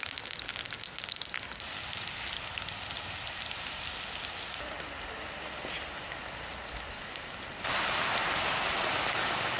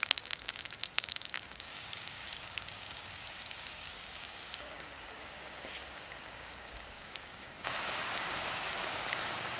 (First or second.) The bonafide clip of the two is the first